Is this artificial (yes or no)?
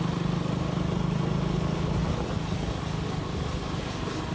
no